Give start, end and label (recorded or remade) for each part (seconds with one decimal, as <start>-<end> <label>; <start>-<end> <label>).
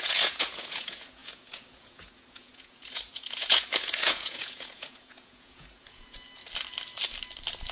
0.0-6.4 remade; 6.4-7.7 recorded